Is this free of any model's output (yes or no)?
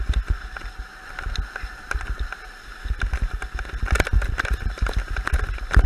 yes